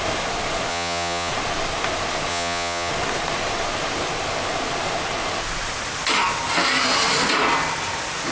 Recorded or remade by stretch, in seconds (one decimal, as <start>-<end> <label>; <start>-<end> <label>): 0.0-0.7 recorded; 0.7-1.3 remade; 1.3-2.3 recorded; 2.3-2.9 remade; 2.9-8.3 recorded